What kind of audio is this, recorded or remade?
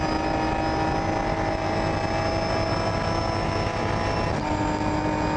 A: recorded